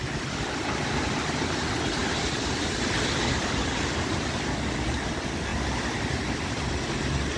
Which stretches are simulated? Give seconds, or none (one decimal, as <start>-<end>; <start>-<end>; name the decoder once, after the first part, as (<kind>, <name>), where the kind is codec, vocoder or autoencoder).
2.0-4.2 (vocoder, BigVGAN v2); 5.5-6.7